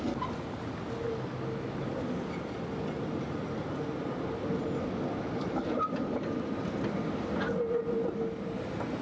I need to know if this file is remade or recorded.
recorded